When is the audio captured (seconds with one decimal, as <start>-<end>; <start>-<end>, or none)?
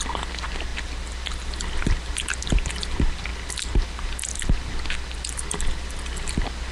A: 0.0-6.7